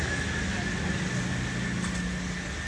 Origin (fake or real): real